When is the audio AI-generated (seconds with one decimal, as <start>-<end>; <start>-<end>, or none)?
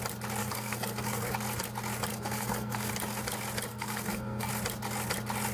0.4-1.3; 2.1-2.9; 3.7-4.5